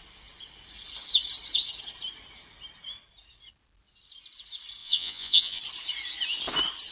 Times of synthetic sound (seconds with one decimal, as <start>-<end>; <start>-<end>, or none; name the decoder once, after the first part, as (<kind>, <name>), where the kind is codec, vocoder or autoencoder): 4.8-5.6 (vocoder, Vocos)